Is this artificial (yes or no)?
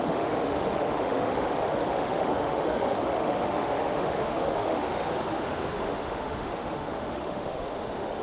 yes